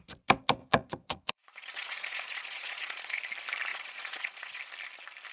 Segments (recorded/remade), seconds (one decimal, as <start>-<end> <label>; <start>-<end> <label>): 0.0-0.6 recorded; 0.6-3.2 remade; 3.2-3.7 recorded; 3.7-4.6 remade; 4.6-5.3 recorded

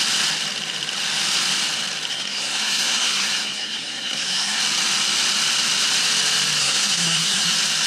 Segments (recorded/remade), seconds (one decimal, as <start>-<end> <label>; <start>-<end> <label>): 0.0-2.1 recorded; 2.1-4.6 remade; 4.6-6.6 recorded; 6.6-7.5 remade; 7.5-7.9 recorded

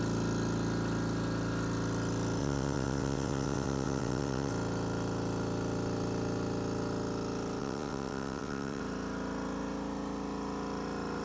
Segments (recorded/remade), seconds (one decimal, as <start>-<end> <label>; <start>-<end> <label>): 0.0-2.4 recorded; 2.4-4.5 remade; 4.5-7.6 recorded; 7.6-8.8 remade; 8.8-11.2 recorded